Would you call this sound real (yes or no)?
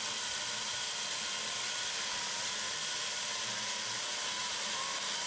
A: yes